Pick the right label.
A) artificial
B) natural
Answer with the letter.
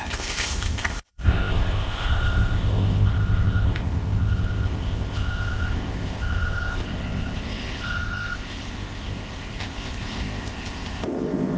A